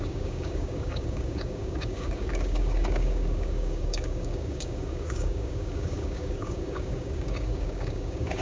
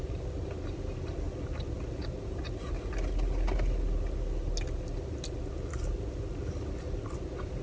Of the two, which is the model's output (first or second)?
first